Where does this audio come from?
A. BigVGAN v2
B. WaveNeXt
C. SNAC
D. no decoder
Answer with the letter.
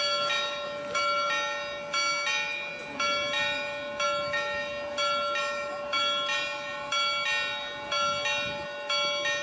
D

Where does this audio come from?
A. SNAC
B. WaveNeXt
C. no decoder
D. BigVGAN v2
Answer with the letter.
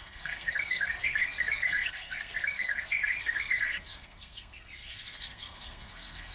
A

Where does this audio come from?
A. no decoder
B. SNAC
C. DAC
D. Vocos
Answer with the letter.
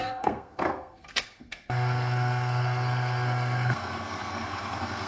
B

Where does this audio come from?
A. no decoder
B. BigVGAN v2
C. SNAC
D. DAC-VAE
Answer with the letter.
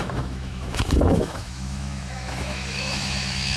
D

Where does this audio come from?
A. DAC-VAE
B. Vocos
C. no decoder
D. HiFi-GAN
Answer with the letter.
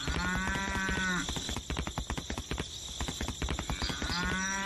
C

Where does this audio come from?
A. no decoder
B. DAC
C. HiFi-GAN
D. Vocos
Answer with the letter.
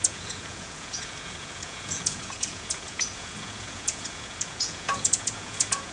D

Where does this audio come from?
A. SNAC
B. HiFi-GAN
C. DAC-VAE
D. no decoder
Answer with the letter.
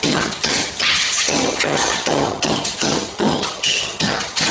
B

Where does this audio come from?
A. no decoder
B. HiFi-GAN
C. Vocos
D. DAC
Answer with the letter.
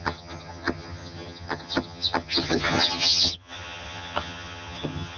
B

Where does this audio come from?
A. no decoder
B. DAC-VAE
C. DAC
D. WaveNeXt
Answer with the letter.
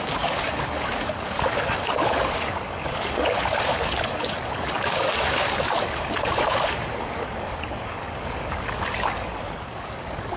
C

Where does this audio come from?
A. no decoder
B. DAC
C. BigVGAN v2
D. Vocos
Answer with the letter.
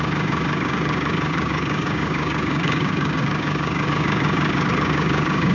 B